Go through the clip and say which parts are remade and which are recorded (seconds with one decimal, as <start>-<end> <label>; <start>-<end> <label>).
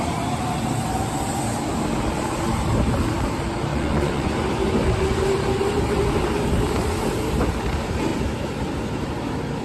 0.0-3.7 recorded; 3.7-4.3 remade; 4.3-9.6 recorded